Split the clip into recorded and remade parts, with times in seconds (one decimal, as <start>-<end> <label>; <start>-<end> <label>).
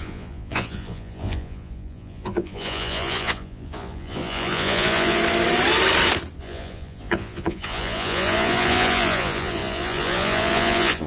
0.0-5.2 remade; 5.2-6.4 recorded; 6.4-11.1 remade